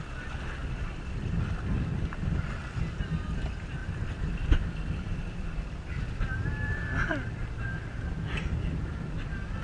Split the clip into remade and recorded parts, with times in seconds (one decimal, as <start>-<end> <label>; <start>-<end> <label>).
0.0-0.6 recorded; 0.6-2.3 remade; 2.3-3.8 recorded; 3.8-8.1 remade; 8.1-9.6 recorded